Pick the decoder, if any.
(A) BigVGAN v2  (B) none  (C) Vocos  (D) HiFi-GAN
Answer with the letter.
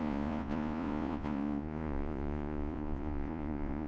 C